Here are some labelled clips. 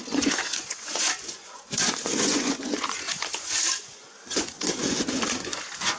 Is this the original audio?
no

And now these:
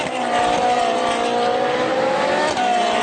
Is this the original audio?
yes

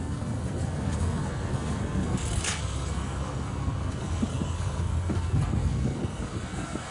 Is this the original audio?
no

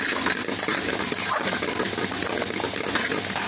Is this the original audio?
yes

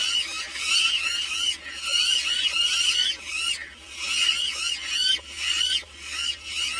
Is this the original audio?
yes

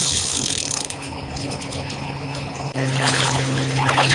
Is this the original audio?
no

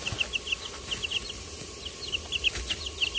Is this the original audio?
yes